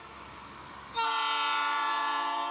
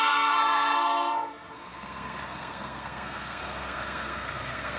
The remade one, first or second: second